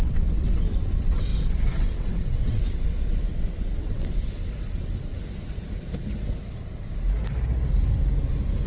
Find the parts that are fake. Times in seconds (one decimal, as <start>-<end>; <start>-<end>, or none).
0.0-5.1